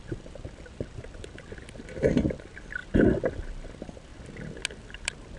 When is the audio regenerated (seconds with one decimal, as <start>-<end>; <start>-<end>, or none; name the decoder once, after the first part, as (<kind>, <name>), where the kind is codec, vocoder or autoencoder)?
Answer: 0.0-4.1 (vocoder, BigVGAN v2); 4.8-5.4